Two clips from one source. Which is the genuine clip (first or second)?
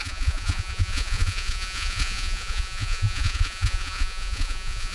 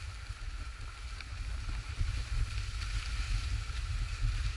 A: second